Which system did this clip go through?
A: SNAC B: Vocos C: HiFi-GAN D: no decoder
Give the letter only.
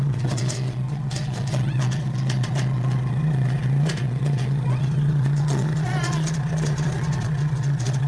B